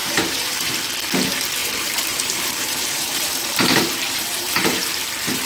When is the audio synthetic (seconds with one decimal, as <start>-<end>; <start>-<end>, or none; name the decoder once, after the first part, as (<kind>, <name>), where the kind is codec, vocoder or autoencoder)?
0.0-0.7 (vocoder, BigVGAN v2); 1.6-4.9